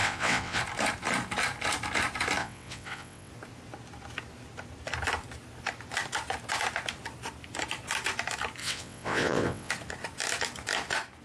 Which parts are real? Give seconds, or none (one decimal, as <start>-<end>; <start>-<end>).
0.6-2.4; 3.3-8.6; 9.7-11.2